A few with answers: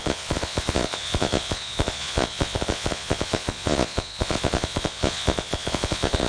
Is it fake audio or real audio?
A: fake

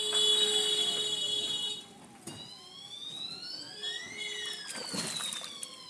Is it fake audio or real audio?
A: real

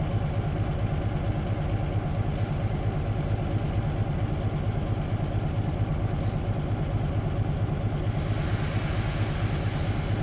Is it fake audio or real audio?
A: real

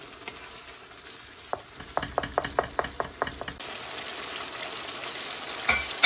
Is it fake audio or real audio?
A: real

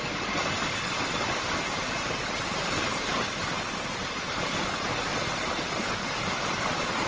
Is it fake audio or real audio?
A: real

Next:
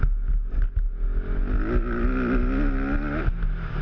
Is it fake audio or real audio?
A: real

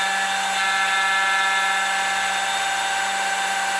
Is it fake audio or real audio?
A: real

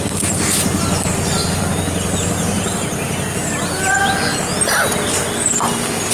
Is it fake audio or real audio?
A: real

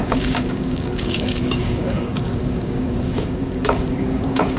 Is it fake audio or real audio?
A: fake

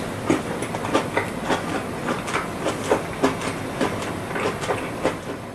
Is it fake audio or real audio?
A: real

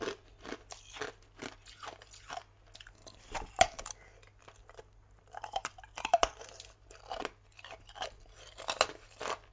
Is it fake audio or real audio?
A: real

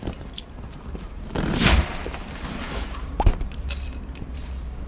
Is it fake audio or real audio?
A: fake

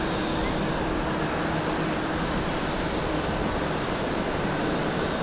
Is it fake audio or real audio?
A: real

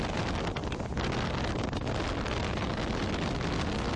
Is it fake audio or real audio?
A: real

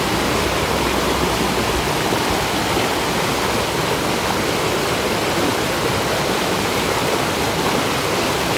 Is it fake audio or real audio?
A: real